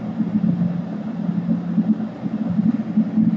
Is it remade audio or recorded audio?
recorded